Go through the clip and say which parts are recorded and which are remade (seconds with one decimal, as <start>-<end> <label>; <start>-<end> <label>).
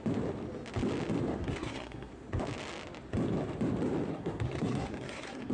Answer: 0.0-1.4 recorded; 1.4-2.1 remade; 2.1-4.1 recorded; 4.1-5.5 remade